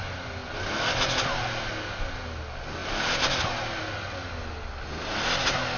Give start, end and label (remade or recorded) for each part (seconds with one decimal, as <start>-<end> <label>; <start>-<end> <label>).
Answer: 0.0-5.8 recorded